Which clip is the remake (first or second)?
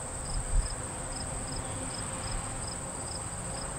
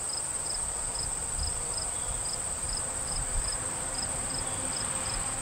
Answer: second